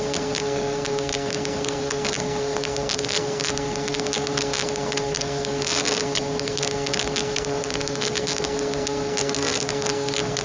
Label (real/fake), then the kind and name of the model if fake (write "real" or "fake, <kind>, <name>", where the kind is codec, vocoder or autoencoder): fake, codec, SNAC